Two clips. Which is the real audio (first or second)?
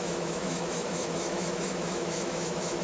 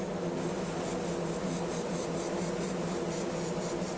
second